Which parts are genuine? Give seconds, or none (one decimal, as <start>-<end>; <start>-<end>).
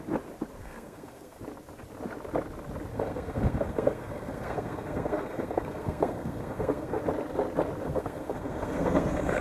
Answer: 0.0-0.6; 1.4-2.9; 7.0-7.8